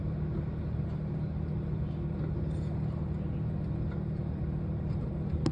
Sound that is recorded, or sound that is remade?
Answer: recorded